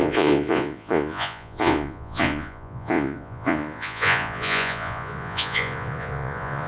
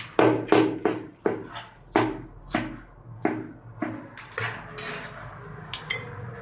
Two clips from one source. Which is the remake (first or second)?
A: first